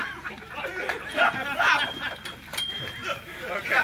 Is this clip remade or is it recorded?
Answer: recorded